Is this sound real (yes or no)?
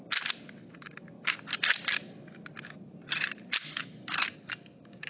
yes